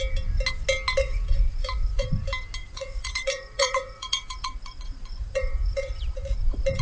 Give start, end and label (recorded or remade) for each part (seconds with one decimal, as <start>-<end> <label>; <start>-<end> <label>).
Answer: 0.0-1.0 recorded; 1.0-2.1 remade; 2.1-2.6 recorded; 2.6-6.8 remade